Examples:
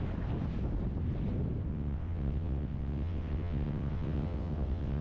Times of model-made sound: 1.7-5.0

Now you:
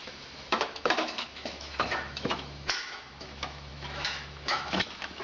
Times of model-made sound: 0.0-5.2

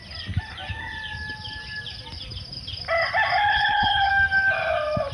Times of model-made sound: 3.5-4.1

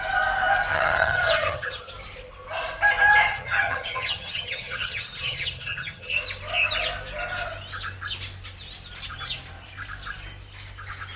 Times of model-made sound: 0.7-1.9; 3.3-6.1

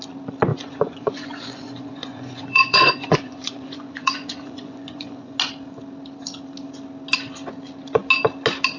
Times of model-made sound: 0.5-5.4

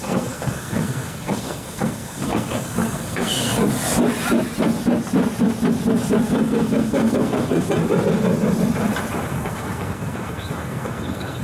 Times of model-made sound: 0.0-3.6; 6.2-7.8; 9.3-11.4

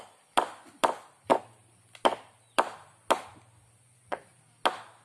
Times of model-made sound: 3.8-4.4

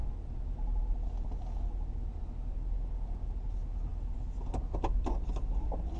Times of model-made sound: none